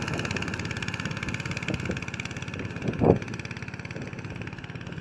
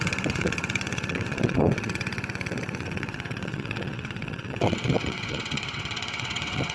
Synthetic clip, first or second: second